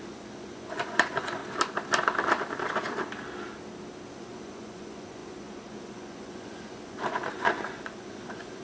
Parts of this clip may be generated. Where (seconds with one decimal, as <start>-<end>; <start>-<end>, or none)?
0.0-1.4; 4.1-8.6

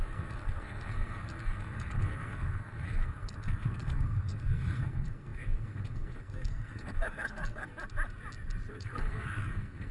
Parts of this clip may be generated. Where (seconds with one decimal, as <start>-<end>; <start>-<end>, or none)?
0.0-7.7; 8.7-9.9

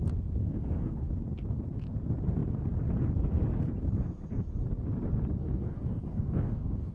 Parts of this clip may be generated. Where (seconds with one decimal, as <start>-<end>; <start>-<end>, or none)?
0.4-1.1; 5.4-6.9

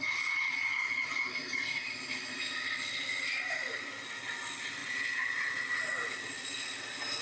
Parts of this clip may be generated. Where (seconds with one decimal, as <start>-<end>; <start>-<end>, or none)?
none

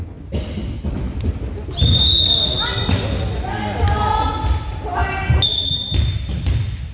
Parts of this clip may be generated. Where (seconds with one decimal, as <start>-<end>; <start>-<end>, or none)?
none

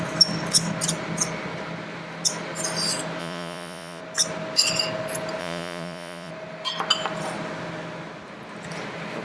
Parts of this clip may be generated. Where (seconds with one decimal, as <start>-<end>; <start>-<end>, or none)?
3.2-4.0; 5.4-6.3